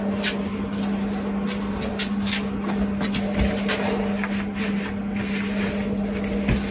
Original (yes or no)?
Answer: yes